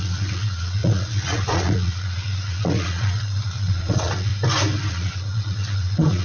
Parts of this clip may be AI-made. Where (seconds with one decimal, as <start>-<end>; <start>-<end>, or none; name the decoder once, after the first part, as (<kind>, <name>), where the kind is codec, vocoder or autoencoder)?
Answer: 0.0-4.3 (vocoder, Vocos); 4.9-6.2